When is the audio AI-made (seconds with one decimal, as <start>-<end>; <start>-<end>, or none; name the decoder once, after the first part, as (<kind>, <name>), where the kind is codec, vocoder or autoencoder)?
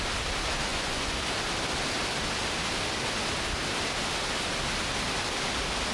0.7-1.2 (vocoder, Vocos)